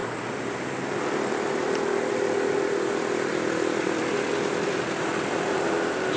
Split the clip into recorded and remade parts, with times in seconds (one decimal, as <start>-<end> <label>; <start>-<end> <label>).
0.0-2.1 remade; 2.1-3.3 recorded; 3.3-4.3 remade; 4.3-6.2 recorded